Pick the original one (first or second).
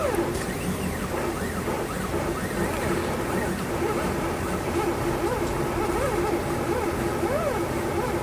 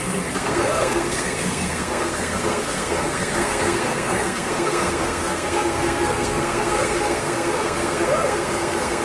first